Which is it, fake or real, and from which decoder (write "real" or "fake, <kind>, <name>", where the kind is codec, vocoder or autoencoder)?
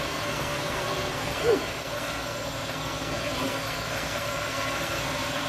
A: fake, codec, SNAC